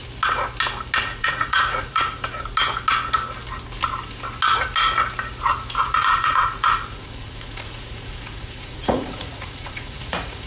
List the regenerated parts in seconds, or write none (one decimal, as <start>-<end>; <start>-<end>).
1.0-2.2; 5.8-10.5